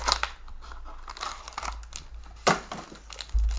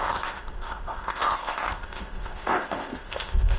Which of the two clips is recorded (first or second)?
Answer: first